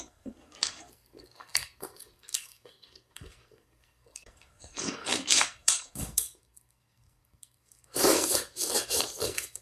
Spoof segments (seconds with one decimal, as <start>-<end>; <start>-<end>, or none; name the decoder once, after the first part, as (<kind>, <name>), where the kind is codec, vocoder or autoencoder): 0.0-9.6 (codec, SNAC)